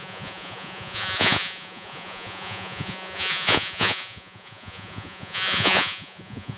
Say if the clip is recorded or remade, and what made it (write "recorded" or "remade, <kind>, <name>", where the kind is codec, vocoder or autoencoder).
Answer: remade, vocoder, Vocos